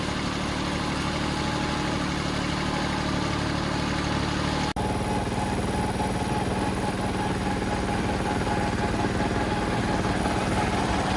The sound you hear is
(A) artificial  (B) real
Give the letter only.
B